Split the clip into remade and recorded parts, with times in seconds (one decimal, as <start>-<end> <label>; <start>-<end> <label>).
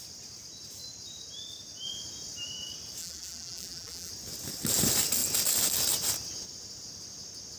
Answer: 0.0-3.0 recorded; 3.0-4.1 remade; 4.1-7.6 recorded